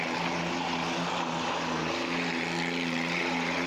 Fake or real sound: real